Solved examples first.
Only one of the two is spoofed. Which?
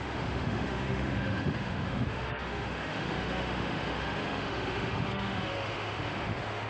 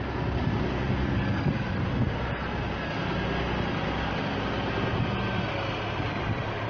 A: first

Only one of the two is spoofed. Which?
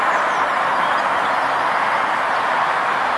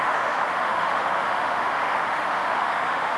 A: second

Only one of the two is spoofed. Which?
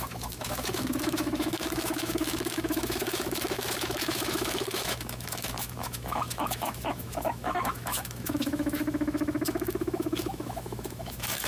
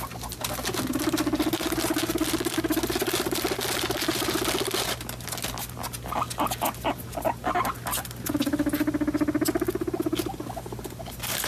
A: first